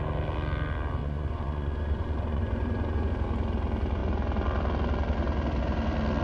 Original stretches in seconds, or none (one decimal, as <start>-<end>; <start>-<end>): 0.0-1.0; 3.1-6.2